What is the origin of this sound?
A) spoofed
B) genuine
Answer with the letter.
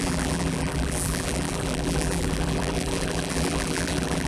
A